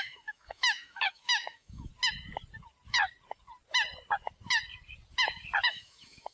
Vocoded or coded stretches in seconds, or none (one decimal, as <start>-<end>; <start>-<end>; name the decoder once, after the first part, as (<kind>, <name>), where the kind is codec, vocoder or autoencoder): 0.0-1.9 (autoencoder, DAC-VAE); 5.7-6.3